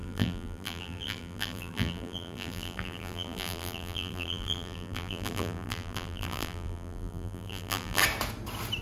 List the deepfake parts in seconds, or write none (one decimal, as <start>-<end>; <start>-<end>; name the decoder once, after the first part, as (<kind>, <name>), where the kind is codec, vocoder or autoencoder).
0.0-8.0 (vocoder, BigVGAN v2)